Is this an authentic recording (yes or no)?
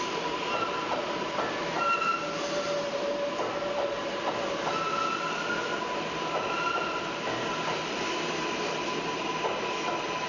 yes